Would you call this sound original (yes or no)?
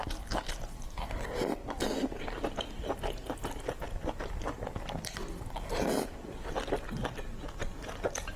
yes